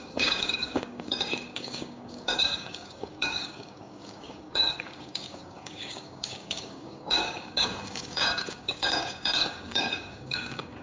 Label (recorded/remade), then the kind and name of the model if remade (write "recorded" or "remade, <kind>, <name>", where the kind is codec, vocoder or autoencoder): remade, codec, DAC